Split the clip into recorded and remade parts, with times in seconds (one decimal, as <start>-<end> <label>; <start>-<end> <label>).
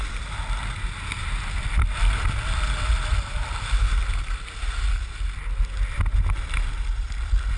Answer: 0.0-7.6 recorded